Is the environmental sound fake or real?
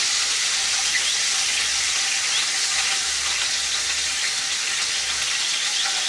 real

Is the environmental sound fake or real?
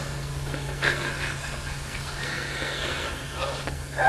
fake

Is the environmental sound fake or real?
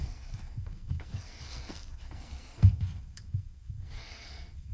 fake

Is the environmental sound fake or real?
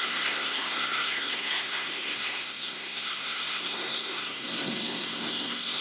fake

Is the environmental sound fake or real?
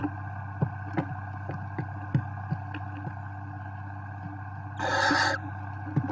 real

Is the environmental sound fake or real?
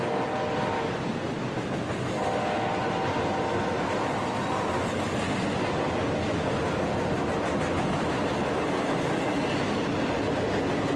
real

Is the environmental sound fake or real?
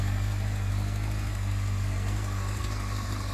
fake